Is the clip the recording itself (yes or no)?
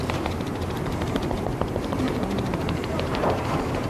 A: no